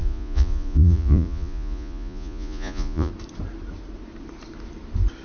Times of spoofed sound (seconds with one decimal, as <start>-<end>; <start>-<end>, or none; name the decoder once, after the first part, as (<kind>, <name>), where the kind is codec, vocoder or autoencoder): 0.0-3.1 (vocoder, Vocos)